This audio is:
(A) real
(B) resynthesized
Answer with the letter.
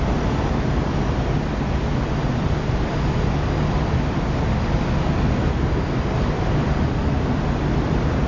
A